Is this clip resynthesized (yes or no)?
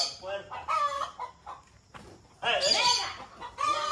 no